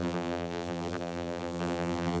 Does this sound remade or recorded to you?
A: remade